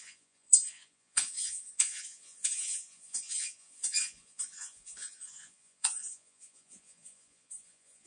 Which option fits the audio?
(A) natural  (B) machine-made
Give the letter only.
B